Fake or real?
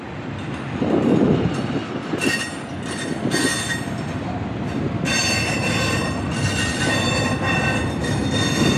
real